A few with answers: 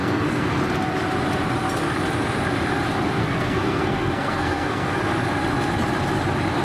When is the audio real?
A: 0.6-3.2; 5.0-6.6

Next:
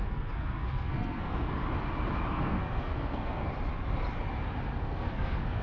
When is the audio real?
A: 1.6-2.3; 3.5-4.8

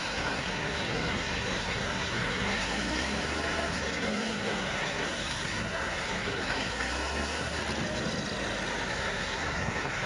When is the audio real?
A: 7.6-8.9

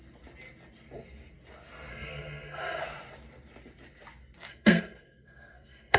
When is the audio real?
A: 0.0-1.9; 2.8-4.5

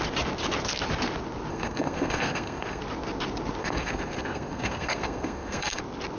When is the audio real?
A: 0.0-1.5; 2.8-3.6; 5.8-6.2

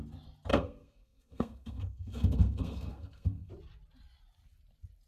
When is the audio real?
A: 0.0-0.5; 3.5-5.1